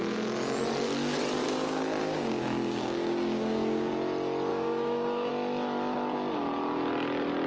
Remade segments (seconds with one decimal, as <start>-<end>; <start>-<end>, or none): 1.4-3.9; 4.5-5.3